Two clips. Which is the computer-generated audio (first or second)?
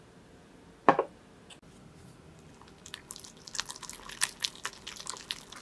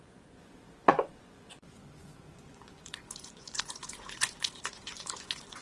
second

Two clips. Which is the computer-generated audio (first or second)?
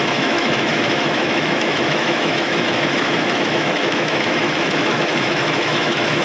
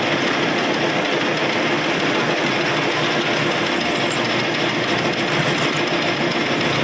first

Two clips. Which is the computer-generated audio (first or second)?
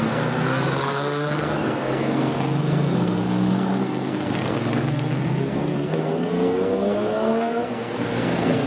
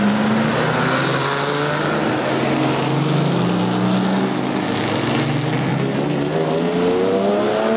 first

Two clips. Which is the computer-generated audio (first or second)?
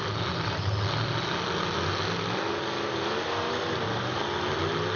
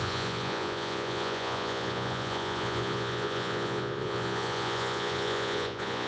second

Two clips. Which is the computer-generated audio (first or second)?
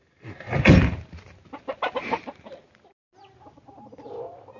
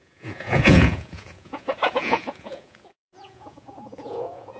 second